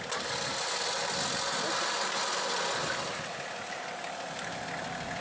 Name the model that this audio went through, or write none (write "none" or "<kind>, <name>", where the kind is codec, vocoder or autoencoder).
none